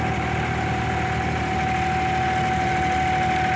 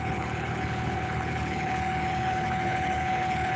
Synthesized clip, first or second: second